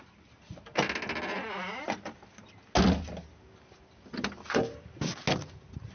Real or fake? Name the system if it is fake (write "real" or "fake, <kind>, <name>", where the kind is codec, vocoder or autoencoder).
real